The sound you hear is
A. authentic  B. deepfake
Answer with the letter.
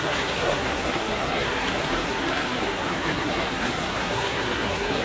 B